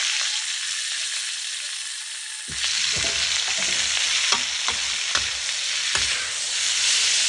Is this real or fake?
real